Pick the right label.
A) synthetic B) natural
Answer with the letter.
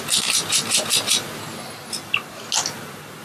B